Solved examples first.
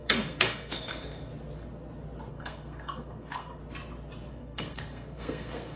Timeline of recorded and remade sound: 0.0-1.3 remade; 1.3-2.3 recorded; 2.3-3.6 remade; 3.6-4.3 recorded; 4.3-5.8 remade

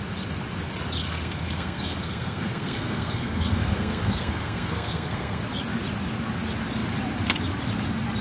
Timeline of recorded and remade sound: 0.0-1.0 recorded; 1.0-5.4 remade; 5.4-8.2 recorded

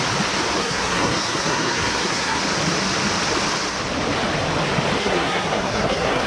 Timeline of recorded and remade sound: 0.0-0.6 recorded; 0.6-2.4 remade; 2.4-5.0 recorded; 5.0-6.3 remade

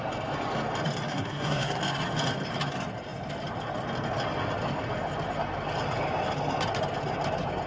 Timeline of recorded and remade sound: 0.0-1.1 recorded; 1.1-1.8 remade; 1.8-7.7 recorded

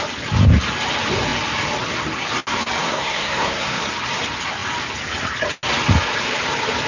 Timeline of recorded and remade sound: 0.0-2.8 recorded; 2.8-3.8 remade; 3.8-6.9 recorded

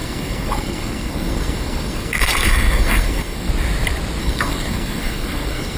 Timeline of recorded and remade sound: 0.0-3.5 remade; 3.5-4.2 recorded; 4.2-5.8 remade

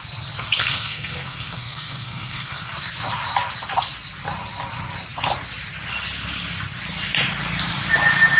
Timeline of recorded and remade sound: 0.0-0.6 recorded; 0.6-2.7 remade; 2.7-8.4 recorded

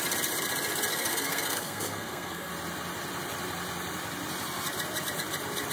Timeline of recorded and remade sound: 0.0-0.9 recorded; 0.9-2.5 remade; 2.5-5.7 recorded